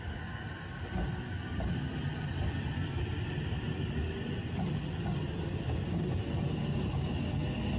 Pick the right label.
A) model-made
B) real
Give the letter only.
B